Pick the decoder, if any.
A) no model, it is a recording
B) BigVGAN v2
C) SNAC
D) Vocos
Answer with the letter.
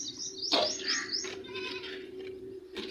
B